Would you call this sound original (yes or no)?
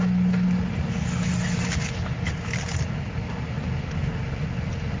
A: yes